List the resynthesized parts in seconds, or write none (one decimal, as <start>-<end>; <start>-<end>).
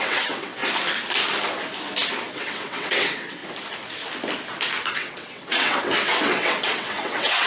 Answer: 0.0-0.6; 2.3-3.4; 4.9-7.5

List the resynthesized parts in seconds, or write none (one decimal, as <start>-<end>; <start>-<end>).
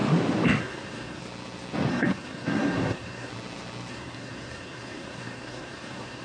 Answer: 0.6-1.2; 1.9-3.3; 3.9-6.2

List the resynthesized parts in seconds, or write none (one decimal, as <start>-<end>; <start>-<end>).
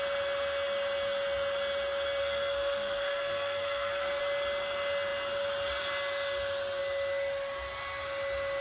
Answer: 2.2-4.2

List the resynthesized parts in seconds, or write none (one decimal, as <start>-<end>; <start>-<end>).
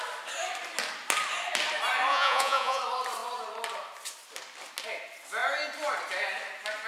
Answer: 2.1-2.8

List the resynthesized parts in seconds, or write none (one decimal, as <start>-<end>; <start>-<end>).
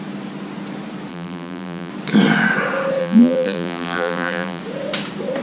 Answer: 1.1-1.9; 3.0-4.6